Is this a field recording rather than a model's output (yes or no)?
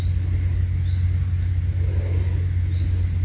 yes